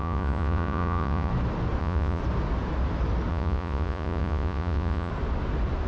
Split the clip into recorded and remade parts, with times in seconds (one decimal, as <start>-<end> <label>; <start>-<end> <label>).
0.0-1.3 remade; 1.3-1.8 recorded; 1.8-2.2 remade; 2.2-3.3 recorded; 3.3-5.1 remade; 5.1-5.9 recorded